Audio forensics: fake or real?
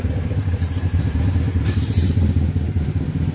fake